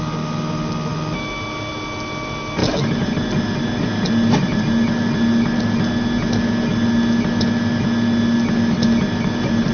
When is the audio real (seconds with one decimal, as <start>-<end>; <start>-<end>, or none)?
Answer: 0.0-9.7